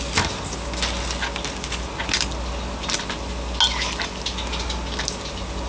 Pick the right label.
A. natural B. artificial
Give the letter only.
A